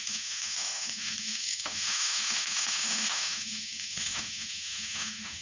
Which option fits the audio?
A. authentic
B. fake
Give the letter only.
B